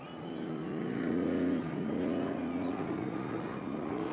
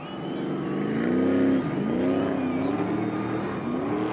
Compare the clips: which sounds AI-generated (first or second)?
first